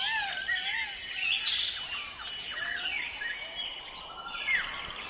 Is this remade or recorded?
recorded